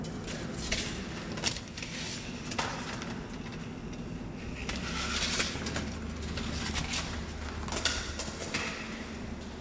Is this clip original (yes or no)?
yes